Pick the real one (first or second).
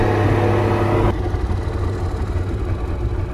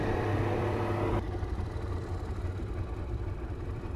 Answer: first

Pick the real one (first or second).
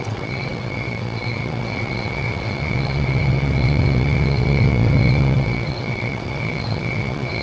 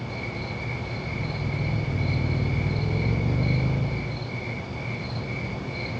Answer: second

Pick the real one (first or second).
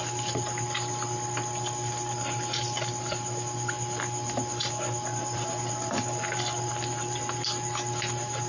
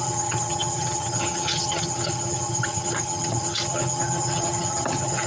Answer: first